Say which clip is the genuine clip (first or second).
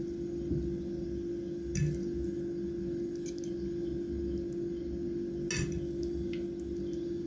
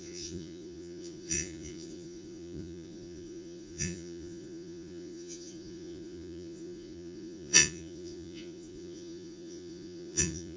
first